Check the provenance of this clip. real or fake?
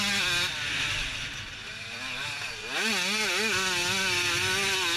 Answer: real